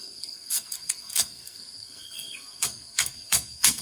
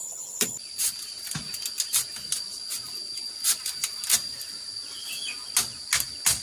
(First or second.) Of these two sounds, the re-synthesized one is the first